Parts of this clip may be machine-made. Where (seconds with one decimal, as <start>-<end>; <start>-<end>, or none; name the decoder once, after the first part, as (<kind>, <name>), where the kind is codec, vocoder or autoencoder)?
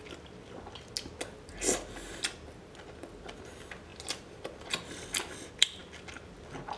none